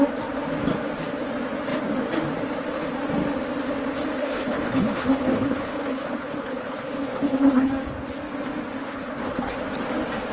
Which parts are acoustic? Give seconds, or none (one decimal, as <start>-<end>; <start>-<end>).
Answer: 0.0-4.2; 7.7-8.8; 9.6-10.3